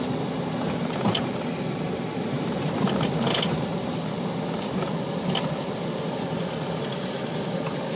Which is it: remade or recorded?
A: recorded